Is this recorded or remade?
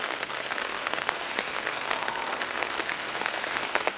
remade